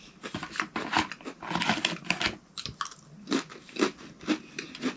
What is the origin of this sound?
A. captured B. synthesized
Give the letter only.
A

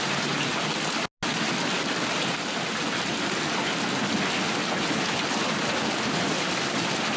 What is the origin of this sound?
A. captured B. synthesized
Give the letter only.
A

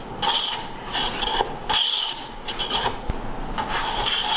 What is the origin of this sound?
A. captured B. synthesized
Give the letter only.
A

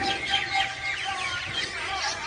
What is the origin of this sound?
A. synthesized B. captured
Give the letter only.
A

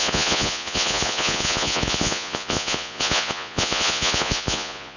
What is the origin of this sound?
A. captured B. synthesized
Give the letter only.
B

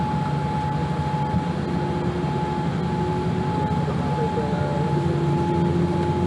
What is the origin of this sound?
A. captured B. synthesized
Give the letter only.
A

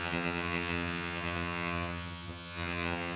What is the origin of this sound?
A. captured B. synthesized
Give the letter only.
B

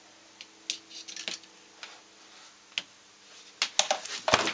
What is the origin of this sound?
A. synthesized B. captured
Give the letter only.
B